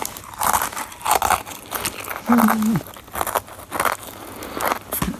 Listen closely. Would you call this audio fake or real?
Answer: real